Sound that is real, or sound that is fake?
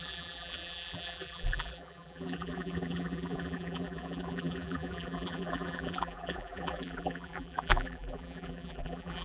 fake